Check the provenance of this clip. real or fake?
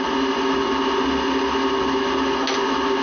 real